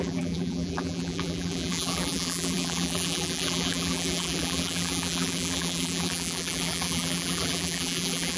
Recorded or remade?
remade